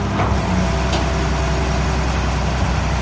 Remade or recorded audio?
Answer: recorded